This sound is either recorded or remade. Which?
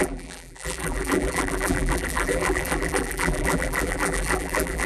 remade